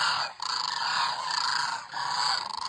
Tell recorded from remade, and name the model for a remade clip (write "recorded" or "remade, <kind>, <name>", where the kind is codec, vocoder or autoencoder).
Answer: recorded